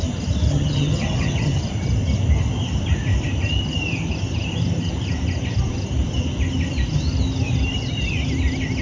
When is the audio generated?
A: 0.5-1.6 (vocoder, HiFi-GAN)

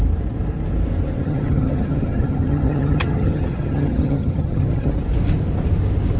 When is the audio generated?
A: 1.2-4.9 (vocoder, HiFi-GAN)